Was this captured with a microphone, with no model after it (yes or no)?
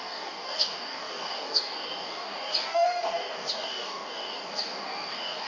no